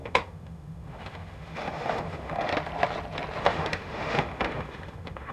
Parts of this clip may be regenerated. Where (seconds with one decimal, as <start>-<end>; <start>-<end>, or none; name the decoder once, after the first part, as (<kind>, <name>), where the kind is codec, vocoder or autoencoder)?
0.0-2.5 (autoencoder, DAC-VAE); 3.4-5.3